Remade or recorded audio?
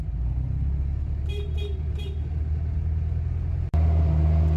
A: recorded